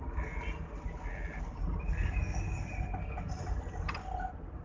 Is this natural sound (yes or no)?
yes